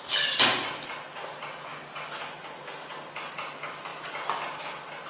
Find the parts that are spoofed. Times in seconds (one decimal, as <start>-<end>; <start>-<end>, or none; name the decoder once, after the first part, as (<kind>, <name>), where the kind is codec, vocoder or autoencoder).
none